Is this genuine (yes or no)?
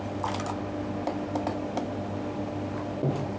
yes